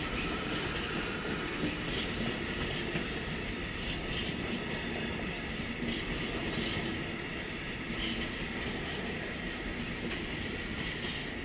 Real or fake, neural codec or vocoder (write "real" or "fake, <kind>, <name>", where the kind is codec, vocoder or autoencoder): real